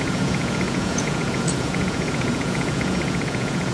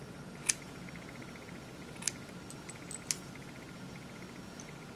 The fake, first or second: first